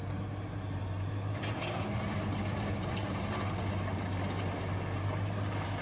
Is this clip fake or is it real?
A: real